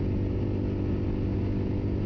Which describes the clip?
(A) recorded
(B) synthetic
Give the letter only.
A